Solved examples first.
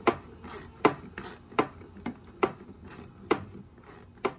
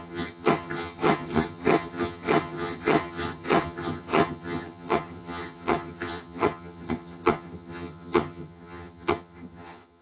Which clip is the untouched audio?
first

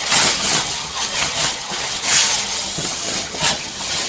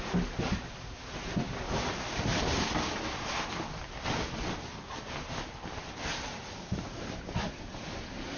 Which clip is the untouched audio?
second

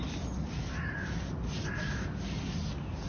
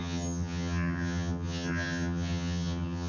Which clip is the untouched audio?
first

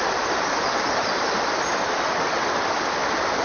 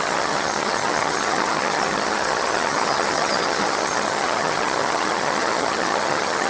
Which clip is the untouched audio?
first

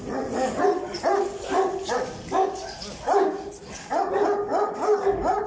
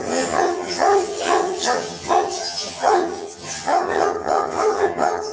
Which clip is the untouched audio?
first